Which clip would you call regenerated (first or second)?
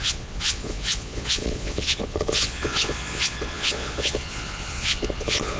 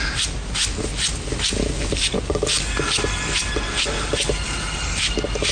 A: first